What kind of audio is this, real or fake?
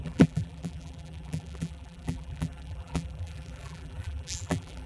fake